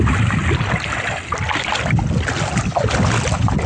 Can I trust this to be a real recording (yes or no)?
yes